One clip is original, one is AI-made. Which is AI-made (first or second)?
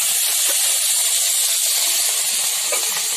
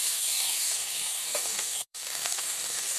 second